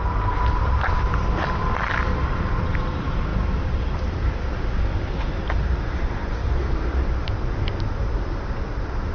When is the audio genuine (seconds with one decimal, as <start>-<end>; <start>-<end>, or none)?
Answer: 0.0-9.1